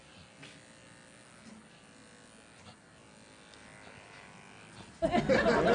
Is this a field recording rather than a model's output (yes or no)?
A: yes